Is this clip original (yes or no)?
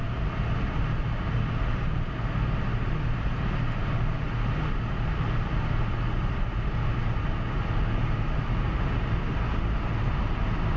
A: yes